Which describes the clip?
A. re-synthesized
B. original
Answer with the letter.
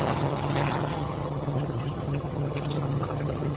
A